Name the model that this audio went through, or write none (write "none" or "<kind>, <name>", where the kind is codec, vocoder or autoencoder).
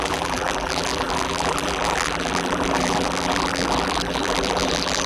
vocoder, BigVGAN v2